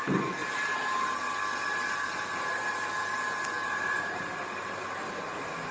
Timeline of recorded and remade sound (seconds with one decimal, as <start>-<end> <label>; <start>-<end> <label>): 0.0-0.4 remade; 0.4-3.8 recorded; 3.8-5.7 remade